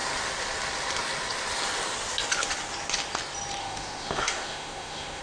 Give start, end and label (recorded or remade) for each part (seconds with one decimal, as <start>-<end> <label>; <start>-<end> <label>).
0.0-3.6 recorded; 3.6-5.2 remade